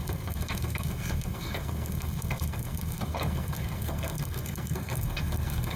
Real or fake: fake